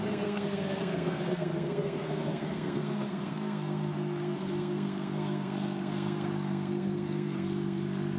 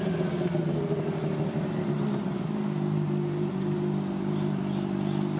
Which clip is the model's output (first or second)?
first